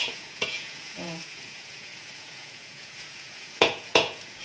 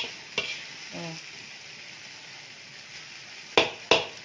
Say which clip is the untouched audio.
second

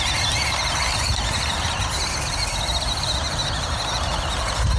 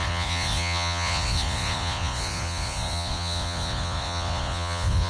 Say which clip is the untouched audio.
first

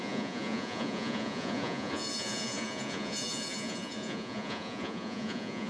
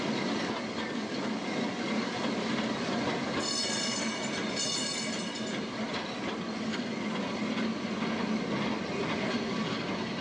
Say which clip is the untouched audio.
second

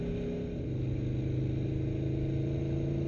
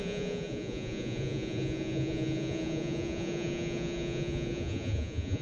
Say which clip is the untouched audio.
first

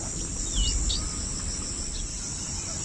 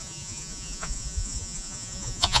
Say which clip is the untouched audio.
first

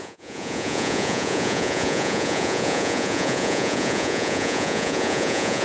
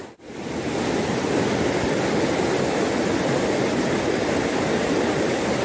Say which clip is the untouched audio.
second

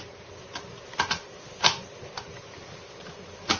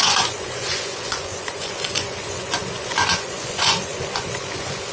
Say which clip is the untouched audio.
first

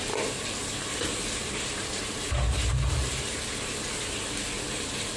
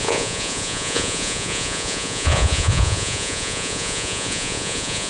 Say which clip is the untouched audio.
first